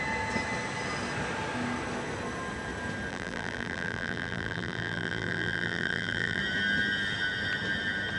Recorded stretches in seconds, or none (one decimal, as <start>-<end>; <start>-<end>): 0.0-3.1; 6.4-8.2